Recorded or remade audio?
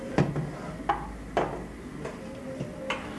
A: recorded